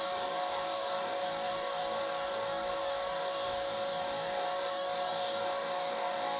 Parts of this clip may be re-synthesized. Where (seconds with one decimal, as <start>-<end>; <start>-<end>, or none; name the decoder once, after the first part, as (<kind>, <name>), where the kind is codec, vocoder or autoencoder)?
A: 0.0-6.4 (codec, DAC)